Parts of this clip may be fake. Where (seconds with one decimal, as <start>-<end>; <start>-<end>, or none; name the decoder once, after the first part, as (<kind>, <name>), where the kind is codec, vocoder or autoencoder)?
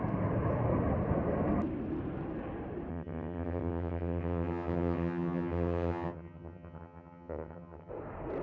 2.9-7.9 (vocoder, HiFi-GAN)